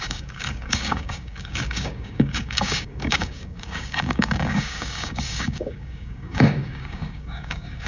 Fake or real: fake